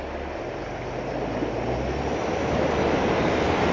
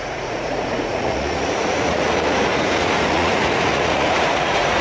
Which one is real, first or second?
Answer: first